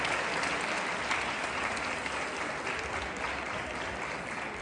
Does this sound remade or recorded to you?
recorded